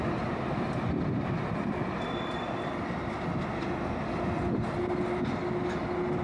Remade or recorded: recorded